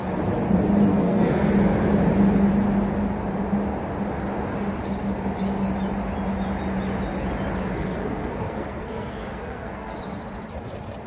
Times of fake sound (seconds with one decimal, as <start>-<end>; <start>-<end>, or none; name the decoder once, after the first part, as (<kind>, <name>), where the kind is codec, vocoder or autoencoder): 0.9-1.5 (codec, SNAC); 7.7-10.0